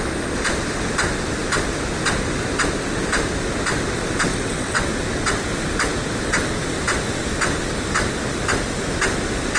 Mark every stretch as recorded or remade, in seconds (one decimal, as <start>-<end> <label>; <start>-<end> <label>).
0.0-4.3 recorded; 4.3-4.8 remade; 4.8-9.6 recorded